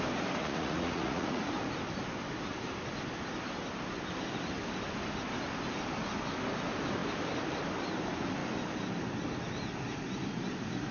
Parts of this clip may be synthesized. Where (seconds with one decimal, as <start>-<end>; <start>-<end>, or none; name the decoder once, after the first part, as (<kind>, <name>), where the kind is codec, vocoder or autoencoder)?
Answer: 0.4-1.4 (vocoder, Vocos)